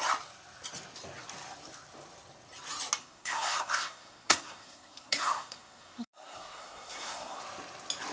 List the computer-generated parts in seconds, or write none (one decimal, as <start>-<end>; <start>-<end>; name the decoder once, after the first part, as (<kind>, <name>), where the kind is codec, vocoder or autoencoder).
3.0-7.4 (codec, SNAC)